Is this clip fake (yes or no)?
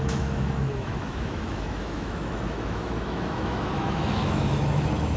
yes